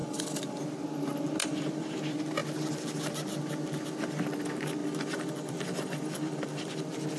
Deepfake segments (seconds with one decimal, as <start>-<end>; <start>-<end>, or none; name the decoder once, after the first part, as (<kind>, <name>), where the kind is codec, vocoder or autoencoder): 0.0-0.6 (vocoder, BigVGAN v2); 1.4-2.0; 4.8-6.8

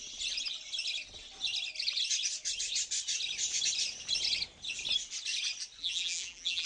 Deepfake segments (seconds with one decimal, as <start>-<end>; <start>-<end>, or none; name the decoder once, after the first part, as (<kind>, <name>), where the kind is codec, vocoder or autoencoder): 5.8-6.7 (vocoder, BigVGAN v2)

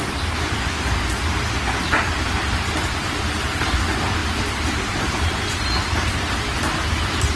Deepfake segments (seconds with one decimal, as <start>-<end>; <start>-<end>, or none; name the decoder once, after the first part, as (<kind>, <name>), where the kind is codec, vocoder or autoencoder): 4.2-7.4 (vocoder, BigVGAN v2)

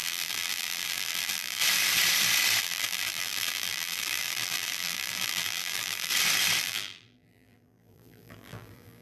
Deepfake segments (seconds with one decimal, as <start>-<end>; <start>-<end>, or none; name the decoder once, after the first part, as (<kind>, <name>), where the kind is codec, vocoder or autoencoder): 0.0-1.6 (vocoder, BigVGAN v2); 2.6-6.1; 6.6-9.0

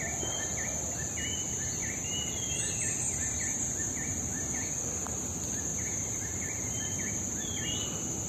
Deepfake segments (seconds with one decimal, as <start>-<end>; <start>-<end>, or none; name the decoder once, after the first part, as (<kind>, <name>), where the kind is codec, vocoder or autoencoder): 1.8-4.7 (vocoder, BigVGAN v2); 5.7-6.8